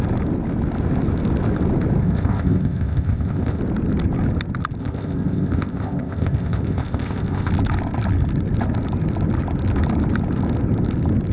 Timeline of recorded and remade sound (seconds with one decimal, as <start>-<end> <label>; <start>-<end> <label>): 0.0-2.0 recorded; 2.0-3.6 remade; 3.6-4.8 recorded; 4.8-7.5 remade; 7.5-11.3 recorded

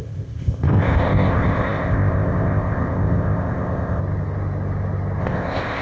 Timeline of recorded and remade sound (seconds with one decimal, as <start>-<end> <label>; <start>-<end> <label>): 0.0-4.0 remade; 4.0-5.2 recorded; 5.2-5.8 remade

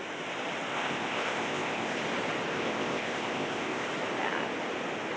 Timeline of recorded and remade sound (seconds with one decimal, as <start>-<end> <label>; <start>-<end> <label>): 0.0-0.7 recorded; 0.7-2.0 remade; 2.0-2.5 recorded; 2.5-3.9 remade; 3.9-5.2 recorded

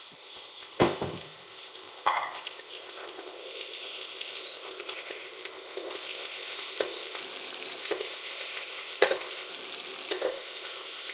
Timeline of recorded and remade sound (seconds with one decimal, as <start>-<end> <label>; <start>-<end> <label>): 0.0-7.2 remade; 7.2-7.8 recorded; 7.8-9.5 remade; 9.5-10.1 recorded; 10.1-11.1 remade

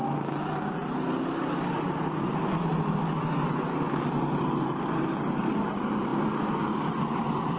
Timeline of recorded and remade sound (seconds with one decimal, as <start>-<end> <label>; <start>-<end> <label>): 0.0-7.6 recorded

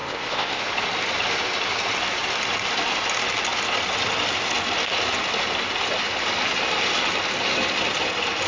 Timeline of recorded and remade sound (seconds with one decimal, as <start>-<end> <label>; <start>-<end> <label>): 0.0-0.6 remade; 0.6-8.5 recorded

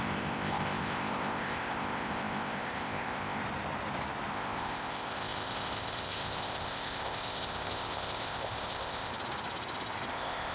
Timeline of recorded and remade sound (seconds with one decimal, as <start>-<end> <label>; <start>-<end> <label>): 0.0-3.4 remade; 3.4-4.3 recorded; 4.3-9.1 remade; 9.1-10.1 recorded; 10.1-10.5 remade

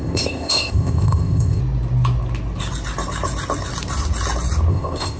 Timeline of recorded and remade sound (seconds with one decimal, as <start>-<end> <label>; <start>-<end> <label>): 0.0-1.6 remade; 1.6-4.7 recorded; 4.7-5.2 remade